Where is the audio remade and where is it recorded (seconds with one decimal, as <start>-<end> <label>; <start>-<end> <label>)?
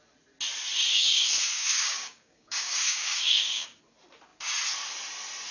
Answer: 0.0-0.9 recorded; 0.9-3.8 remade; 3.8-5.5 recorded